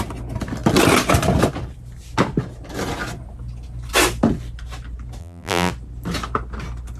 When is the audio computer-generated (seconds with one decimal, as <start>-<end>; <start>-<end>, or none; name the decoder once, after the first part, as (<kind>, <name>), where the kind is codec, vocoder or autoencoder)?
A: 5.2-5.7 (vocoder, BigVGAN v2)